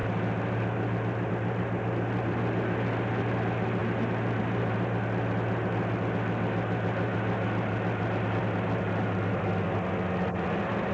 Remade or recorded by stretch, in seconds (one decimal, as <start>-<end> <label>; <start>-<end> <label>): 0.0-10.9 recorded